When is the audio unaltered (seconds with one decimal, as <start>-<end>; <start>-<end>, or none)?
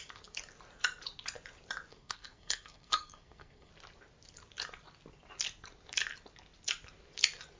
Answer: 0.0-1.9; 3.7-7.6